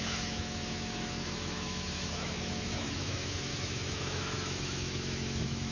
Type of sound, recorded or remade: remade